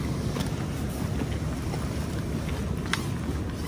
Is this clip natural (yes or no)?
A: yes